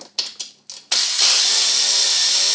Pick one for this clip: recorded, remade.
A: recorded